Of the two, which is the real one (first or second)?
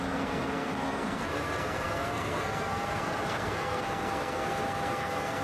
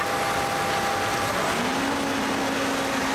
second